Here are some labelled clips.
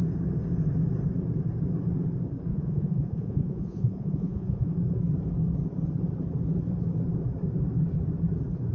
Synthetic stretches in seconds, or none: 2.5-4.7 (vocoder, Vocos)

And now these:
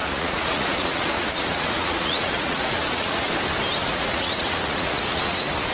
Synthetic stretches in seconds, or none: 0.0-3.3 (vocoder, Vocos); 3.8-5.7

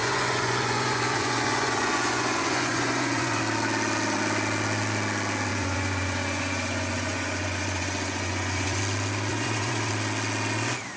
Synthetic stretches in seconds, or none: 0.0-3.4 (vocoder, Vocos); 5.5-8.8; 9.3-9.9